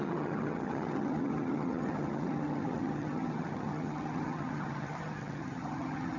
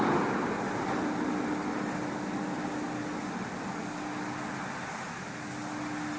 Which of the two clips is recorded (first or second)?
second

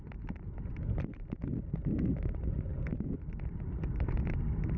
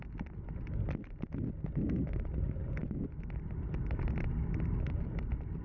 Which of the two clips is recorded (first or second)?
second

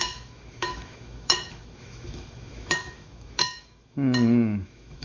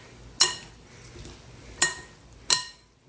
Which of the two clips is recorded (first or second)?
second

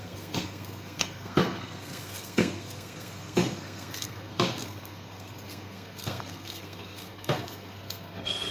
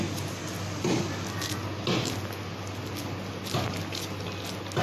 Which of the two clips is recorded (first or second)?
second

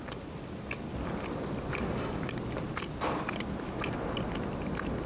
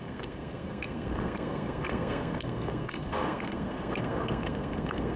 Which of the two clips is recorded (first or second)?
first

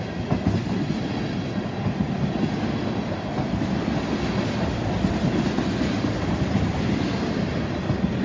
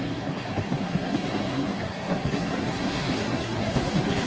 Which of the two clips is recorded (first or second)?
first